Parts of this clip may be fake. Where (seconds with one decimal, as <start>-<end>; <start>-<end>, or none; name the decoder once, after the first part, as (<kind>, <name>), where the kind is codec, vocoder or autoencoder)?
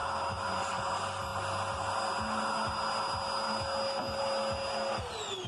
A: none